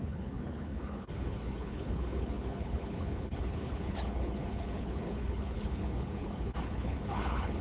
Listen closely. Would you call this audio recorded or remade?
remade